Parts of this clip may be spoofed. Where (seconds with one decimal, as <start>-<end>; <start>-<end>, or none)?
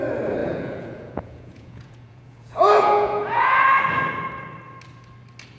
0.4-3.8